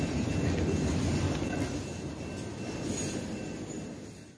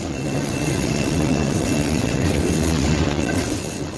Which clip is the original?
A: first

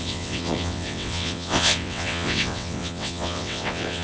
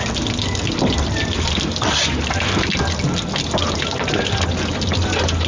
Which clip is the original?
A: second